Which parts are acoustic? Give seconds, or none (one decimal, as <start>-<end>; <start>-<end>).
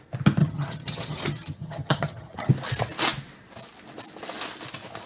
0.0-0.4; 2.5-5.1